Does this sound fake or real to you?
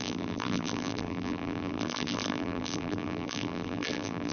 fake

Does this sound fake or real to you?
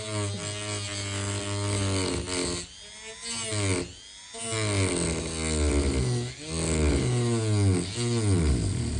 real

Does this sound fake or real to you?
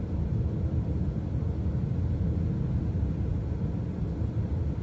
real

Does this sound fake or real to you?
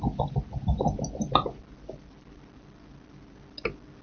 real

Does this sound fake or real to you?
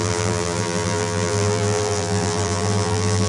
fake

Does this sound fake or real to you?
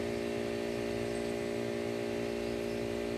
real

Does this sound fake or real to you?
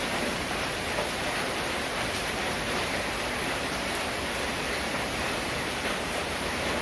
fake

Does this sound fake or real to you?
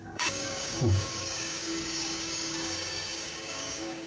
fake